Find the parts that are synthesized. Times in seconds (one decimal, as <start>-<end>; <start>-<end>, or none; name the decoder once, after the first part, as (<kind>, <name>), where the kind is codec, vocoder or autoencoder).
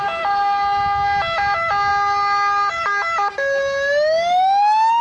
none